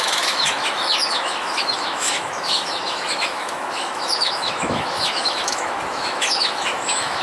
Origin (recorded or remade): remade